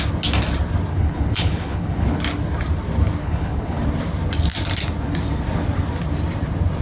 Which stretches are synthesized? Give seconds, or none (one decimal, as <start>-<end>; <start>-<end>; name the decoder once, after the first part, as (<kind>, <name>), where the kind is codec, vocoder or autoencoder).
0.9-2.2 (codec, HILCodec); 3.2-3.8